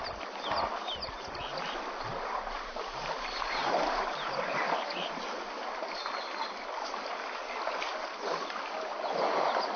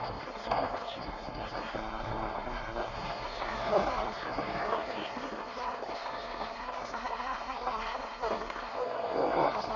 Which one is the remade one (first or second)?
second